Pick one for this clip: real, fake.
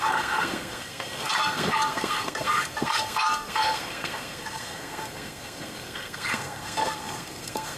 fake